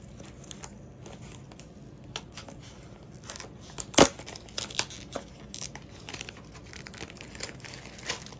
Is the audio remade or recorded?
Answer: recorded